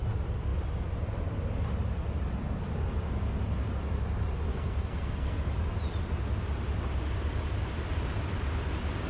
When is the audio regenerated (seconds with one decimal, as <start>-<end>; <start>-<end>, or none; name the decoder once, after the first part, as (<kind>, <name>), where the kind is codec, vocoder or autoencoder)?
4.5-5.4 (codec, SNAC)